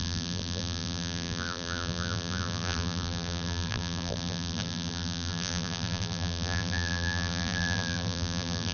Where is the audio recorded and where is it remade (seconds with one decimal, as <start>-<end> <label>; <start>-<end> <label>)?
0.0-8.7 remade